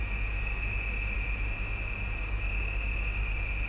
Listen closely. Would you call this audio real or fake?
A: real